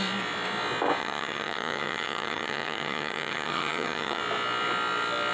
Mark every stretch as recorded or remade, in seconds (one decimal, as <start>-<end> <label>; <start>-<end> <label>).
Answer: 0.0-1.0 recorded; 1.0-4.2 remade; 4.2-5.3 recorded